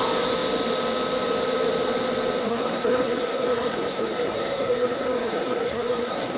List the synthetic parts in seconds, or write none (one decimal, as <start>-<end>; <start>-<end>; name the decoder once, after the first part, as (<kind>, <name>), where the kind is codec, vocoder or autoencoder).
2.4-6.4 (codec, SNAC)